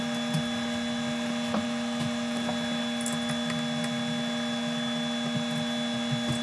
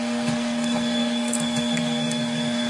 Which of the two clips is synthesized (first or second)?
second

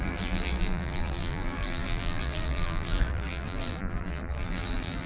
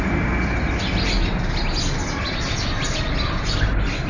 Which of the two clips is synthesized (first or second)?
first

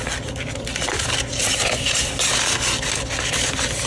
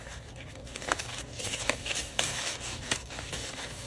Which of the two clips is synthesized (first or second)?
second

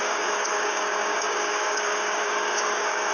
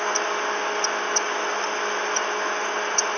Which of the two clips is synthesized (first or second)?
first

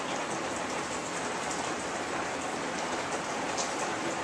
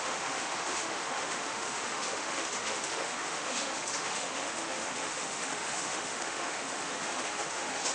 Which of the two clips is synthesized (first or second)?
second